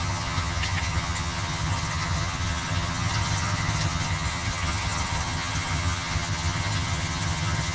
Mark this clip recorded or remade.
remade